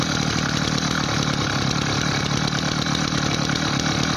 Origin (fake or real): real